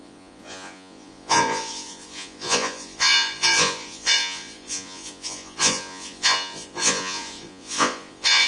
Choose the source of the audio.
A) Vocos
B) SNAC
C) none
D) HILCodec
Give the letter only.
A